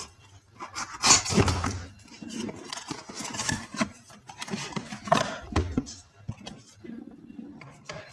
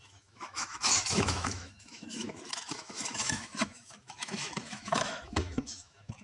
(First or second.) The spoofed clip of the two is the second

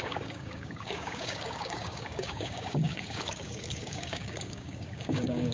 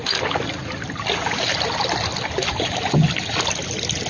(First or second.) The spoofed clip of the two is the first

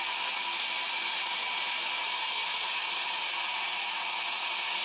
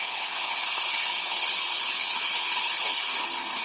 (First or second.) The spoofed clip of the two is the second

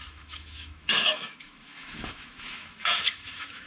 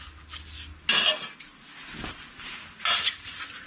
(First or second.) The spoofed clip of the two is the first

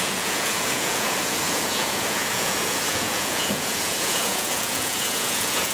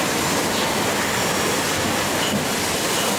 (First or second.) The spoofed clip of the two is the first